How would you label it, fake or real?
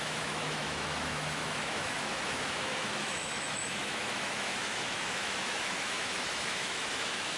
fake